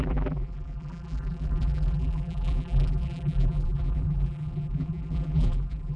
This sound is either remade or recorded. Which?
remade